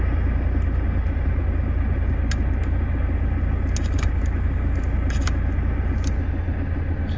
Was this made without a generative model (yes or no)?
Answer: yes